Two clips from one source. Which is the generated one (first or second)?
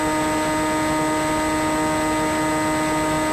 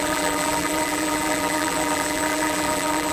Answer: second